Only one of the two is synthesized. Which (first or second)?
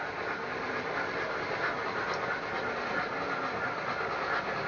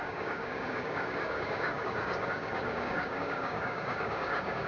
second